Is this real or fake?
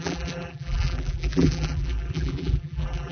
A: fake